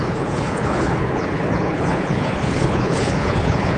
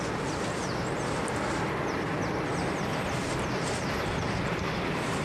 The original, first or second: second